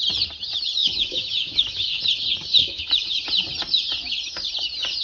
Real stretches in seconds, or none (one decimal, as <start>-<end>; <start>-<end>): 0.0-0.8; 2.0-2.6; 3.2-5.0